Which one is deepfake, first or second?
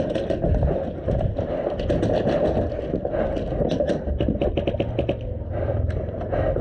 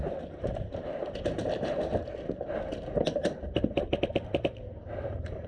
second